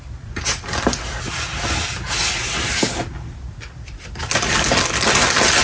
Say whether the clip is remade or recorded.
recorded